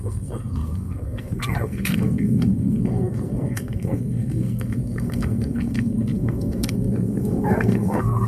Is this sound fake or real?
fake